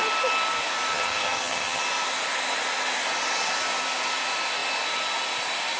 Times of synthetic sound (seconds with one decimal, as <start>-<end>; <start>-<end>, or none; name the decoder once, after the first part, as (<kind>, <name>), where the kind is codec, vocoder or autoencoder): 0.9-1.8 (vocoder, HiFi-GAN)

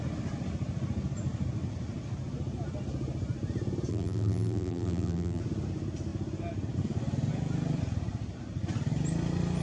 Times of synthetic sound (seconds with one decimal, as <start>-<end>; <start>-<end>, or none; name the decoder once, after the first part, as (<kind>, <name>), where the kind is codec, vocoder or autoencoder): 3.9-5.4 (vocoder, BigVGAN v2)

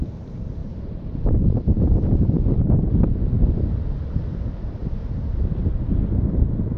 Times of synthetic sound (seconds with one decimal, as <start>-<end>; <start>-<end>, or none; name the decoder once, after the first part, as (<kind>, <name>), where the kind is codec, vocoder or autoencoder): 0.6-4.3 (vocoder, BigVGAN v2); 4.8-5.5

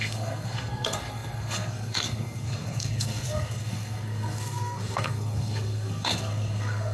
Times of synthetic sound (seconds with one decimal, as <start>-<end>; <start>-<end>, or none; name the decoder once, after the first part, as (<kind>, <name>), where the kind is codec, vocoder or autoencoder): 0.0-6.9 (codec, SNAC)

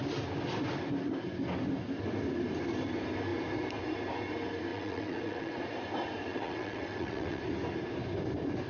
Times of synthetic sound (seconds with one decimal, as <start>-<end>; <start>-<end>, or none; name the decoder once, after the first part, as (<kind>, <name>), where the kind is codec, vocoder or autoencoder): 4.7-5.6 (vocoder, WaveNeXt); 6.3-7.4

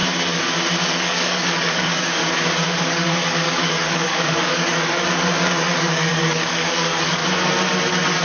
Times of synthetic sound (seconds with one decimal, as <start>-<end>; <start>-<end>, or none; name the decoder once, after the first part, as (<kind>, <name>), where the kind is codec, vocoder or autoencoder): 0.8-2.2 (codec, DAC); 2.8-7.2

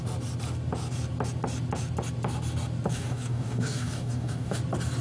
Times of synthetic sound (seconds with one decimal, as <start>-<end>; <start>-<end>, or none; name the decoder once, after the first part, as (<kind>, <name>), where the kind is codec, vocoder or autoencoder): 2.9-4.6 (codec, DAC)

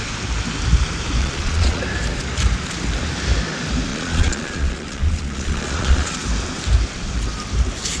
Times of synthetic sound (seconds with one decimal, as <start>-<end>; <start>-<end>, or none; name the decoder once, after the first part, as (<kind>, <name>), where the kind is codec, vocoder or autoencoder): 1.2-1.8 (vocoder, Vocos); 3.9-6.2